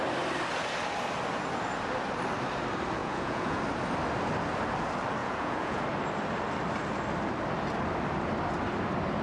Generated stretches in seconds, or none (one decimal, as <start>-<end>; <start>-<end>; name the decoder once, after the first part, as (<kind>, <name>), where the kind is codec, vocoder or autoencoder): 3.0-3.6 (vocoder, Vocos); 5.2-5.8